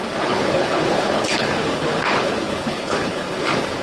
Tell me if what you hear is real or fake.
fake